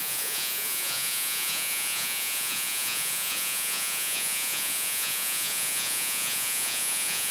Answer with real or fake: fake